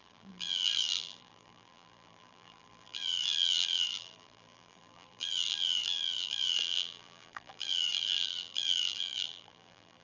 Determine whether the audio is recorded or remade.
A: remade